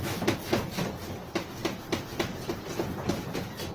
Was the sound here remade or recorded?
recorded